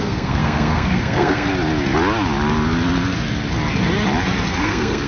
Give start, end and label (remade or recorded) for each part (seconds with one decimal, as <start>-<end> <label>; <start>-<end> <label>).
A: 0.0-1.5 remade; 1.5-4.6 recorded; 4.6-5.1 remade